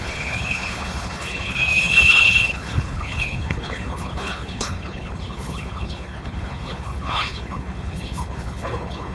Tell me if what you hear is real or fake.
fake